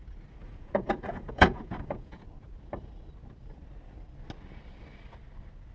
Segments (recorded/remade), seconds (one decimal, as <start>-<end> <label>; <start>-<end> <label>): 0.0-0.4 recorded; 0.4-2.2 remade; 2.2-5.7 recorded